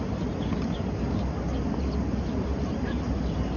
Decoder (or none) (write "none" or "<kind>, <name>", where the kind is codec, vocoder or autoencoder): none